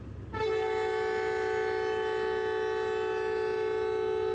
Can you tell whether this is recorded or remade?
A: recorded